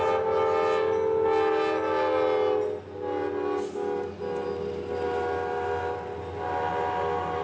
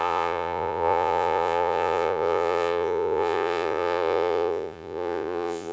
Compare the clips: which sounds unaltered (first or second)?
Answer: first